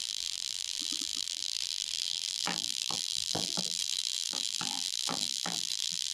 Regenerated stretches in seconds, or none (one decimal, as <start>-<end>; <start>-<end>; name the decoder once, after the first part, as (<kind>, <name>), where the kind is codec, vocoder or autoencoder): 0.0-6.1 (vocoder, BigVGAN v2)